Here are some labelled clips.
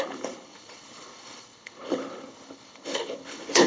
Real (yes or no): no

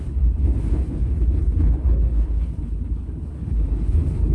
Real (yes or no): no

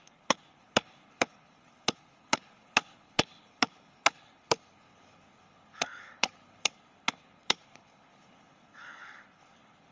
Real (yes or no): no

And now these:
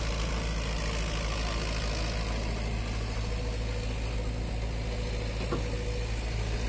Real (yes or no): yes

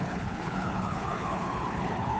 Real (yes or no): no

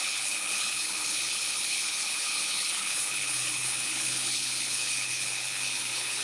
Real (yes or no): no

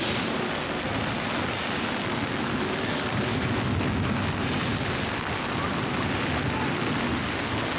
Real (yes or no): yes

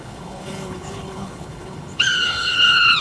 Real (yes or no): no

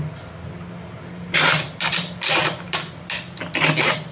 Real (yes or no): yes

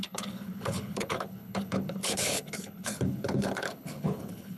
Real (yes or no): no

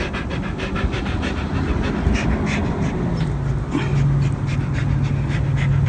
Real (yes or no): yes